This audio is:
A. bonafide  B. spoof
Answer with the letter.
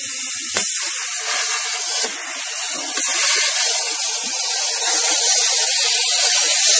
B